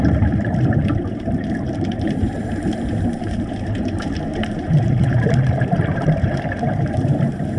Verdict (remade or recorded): remade